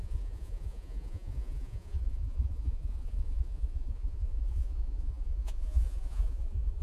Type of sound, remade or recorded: remade